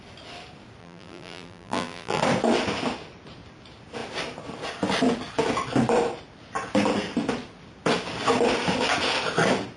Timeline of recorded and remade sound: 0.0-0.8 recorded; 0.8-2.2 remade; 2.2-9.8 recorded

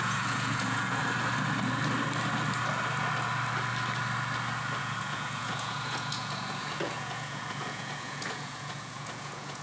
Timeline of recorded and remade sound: 0.0-1.0 remade; 1.0-4.8 recorded; 4.8-9.6 remade